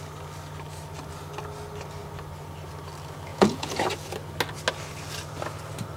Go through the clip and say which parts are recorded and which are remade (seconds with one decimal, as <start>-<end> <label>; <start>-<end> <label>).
0.0-3.3 recorded; 3.3-3.8 remade; 3.8-6.0 recorded

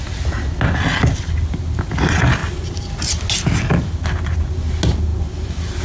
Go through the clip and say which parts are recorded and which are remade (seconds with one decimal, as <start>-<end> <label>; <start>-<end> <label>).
0.0-2.4 recorded; 2.4-2.9 remade; 2.9-5.1 recorded; 5.1-5.8 remade

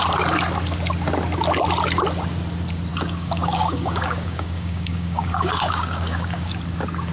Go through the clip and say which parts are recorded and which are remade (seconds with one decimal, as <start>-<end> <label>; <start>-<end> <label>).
0.0-2.9 recorded; 2.9-6.5 remade; 6.5-7.1 recorded

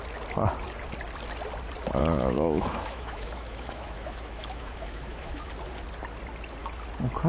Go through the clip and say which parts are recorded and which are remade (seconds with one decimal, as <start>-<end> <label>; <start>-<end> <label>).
0.0-2.0 recorded; 2.0-5.5 remade; 5.5-7.3 recorded

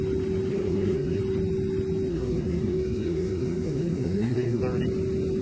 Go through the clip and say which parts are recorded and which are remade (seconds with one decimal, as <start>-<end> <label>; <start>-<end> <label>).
0.0-0.5 recorded; 0.5-1.2 remade; 1.2-2.1 recorded; 2.1-4.6 remade; 4.6-5.4 recorded

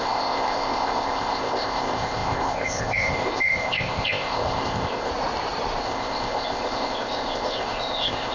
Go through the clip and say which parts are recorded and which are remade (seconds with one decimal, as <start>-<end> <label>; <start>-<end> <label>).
0.0-5.1 remade; 5.1-5.8 recorded; 5.8-8.3 remade